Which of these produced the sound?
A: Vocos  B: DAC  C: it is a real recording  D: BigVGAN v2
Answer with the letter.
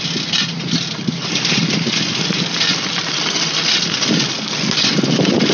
C